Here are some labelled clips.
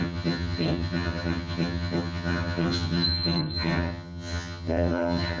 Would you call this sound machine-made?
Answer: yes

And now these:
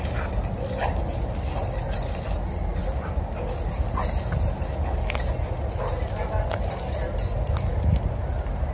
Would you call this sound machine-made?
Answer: no